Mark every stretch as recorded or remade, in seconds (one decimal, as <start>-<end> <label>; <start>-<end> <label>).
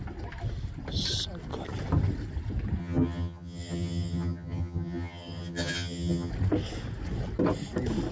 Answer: 0.0-2.8 recorded; 2.8-6.3 remade; 6.3-8.1 recorded